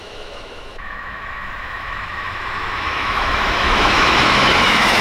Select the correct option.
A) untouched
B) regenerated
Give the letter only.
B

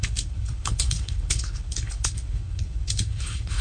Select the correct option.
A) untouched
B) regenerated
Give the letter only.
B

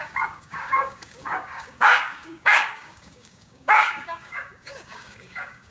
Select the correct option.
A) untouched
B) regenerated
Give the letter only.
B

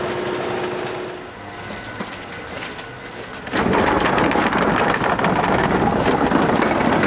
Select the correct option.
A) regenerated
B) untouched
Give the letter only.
B